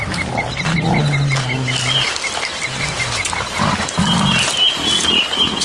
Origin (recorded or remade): recorded